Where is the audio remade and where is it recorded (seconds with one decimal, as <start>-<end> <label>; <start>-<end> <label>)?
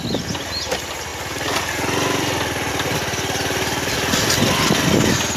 0.0-5.4 recorded